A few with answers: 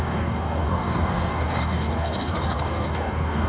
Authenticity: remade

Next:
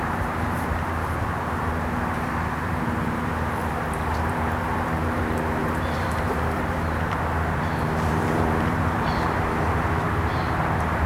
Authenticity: remade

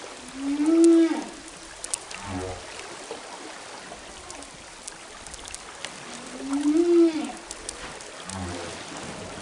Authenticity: recorded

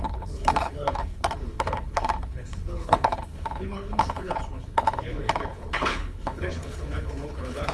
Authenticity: remade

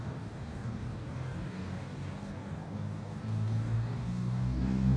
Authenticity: remade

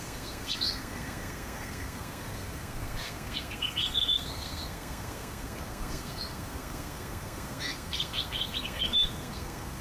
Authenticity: remade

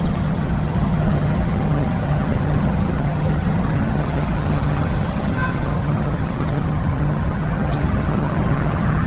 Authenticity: remade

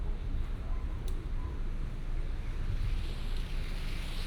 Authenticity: recorded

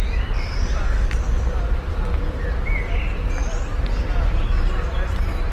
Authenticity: recorded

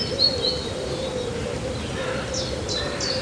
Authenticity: recorded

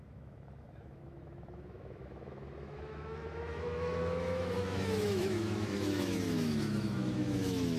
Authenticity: remade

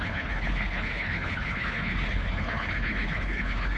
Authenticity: remade